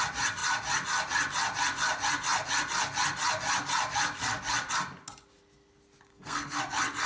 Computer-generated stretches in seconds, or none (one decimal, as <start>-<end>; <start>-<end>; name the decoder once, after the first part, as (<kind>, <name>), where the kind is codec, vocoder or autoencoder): 6.1-6.6 (codec, SNAC)